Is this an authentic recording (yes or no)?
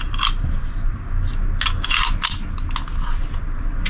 yes